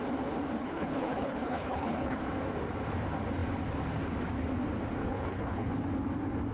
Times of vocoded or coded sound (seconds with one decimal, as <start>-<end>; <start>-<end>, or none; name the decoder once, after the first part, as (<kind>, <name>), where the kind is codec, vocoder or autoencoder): 0.6-2.2 (codec, HILCodec); 5.0-5.7